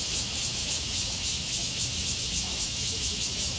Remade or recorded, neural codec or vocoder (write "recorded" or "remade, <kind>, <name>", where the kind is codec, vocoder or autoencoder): remade, autoencoder, DAC-VAE